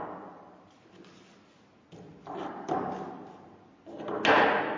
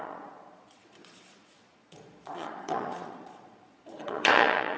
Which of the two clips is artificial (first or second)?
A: second